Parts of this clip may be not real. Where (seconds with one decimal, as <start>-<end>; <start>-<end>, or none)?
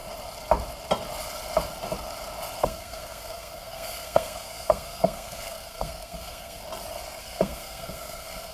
2.6-6.6; 7.2-8.5